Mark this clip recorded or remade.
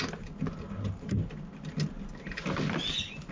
recorded